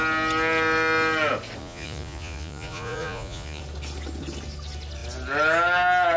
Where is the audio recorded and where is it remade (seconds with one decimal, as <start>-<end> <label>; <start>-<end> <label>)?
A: 0.0-1.6 recorded; 1.6-3.6 remade; 3.6-6.2 recorded